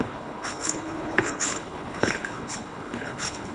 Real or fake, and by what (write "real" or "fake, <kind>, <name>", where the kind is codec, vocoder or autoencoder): fake, codec, HILCodec